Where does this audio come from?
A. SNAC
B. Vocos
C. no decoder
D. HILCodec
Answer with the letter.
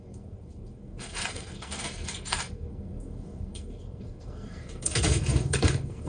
A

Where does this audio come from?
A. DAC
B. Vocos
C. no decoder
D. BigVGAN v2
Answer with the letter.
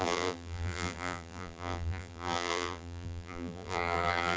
D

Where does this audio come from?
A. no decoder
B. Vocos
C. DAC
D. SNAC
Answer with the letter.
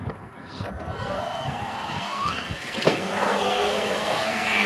D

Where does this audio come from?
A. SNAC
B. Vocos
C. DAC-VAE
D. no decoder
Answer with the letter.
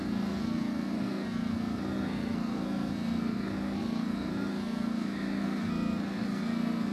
A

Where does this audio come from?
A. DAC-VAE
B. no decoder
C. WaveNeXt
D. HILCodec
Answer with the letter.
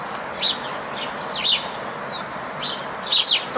B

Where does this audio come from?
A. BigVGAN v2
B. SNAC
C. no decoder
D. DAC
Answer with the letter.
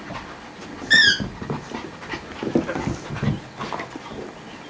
C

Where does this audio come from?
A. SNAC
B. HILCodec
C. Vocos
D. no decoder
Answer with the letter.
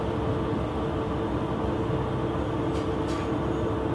D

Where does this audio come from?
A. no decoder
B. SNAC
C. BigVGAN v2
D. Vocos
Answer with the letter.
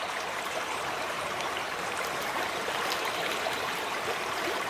C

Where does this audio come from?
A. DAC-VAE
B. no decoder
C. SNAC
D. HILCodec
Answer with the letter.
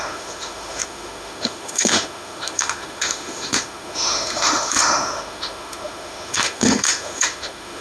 A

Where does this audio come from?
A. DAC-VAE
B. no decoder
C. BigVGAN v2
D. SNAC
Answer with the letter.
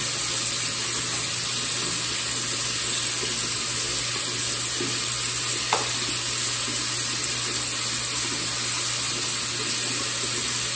B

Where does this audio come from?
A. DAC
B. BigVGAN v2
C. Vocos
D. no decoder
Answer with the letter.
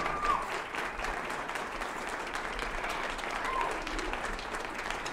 B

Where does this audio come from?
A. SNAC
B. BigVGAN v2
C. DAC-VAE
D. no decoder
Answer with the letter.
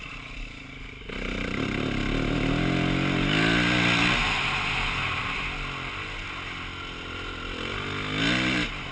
D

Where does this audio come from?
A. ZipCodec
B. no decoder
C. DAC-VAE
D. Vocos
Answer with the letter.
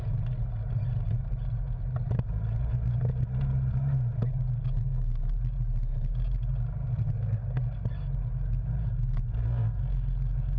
B